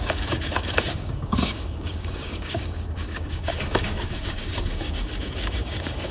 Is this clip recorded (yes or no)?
no